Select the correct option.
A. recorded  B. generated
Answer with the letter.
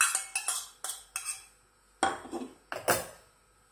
A